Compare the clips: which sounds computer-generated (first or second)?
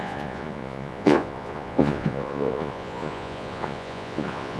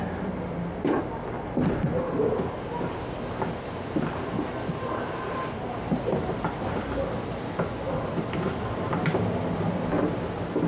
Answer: first